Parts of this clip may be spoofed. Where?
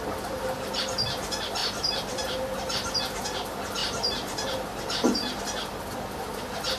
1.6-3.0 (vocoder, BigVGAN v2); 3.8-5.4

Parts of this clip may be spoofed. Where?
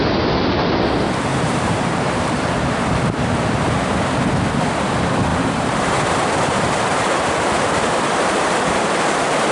1.3-2.5 (vocoder, BigVGAN v2); 5.3-7.9